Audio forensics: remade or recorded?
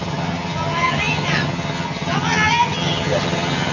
remade